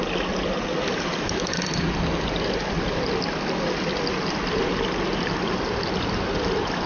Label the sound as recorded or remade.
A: recorded